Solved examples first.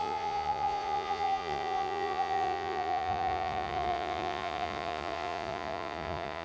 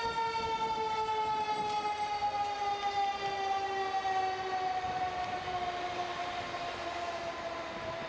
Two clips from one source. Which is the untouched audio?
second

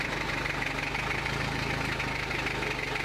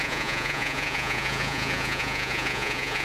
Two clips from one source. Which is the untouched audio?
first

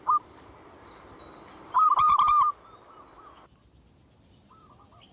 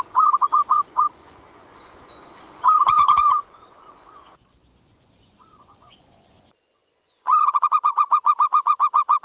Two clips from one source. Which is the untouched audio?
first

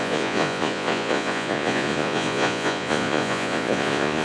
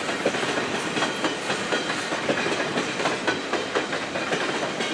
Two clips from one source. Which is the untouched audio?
second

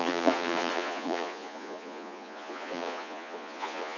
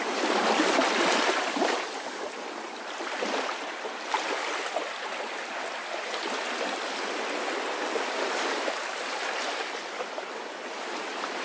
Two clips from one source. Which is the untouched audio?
second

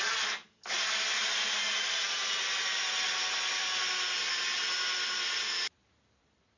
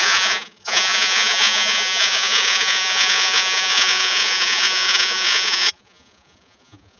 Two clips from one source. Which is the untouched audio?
first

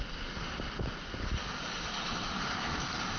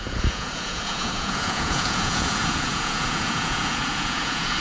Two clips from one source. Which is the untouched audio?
first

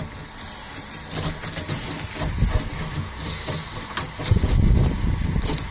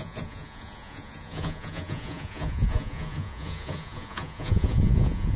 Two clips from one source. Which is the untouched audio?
first